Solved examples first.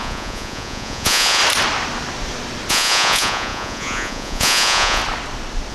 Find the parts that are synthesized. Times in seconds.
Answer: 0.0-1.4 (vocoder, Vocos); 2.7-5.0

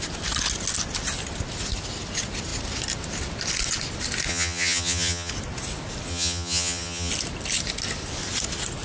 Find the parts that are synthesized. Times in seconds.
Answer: 4.3-5.3 (vocoder, HiFi-GAN); 6.1-7.1

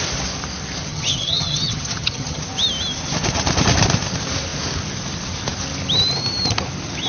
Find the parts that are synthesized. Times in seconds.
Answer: 0.9-2.4 (vocoder, HiFi-GAN)

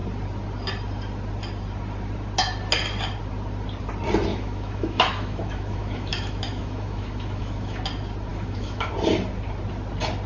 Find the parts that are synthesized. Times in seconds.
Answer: 4.3-7.8 (autoencoder, DAC-VAE); 8.3-8.9

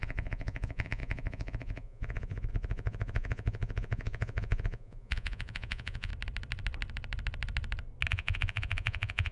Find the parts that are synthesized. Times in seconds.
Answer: 0.0-6.1 (vocoder, Vocos); 8.1-9.3

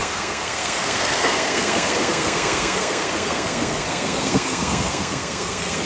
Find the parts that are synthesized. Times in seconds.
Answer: 0.0-5.9 (codec, SNAC)

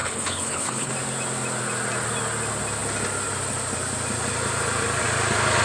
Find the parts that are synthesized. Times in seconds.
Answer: 0.0-0.9 (codec, HILCodec)